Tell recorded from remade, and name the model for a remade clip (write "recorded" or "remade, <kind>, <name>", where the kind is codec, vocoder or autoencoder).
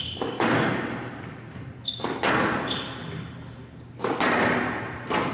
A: recorded